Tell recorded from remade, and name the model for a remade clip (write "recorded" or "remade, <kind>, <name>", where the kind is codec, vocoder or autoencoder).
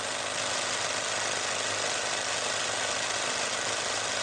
recorded